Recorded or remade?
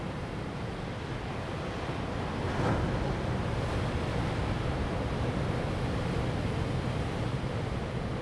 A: recorded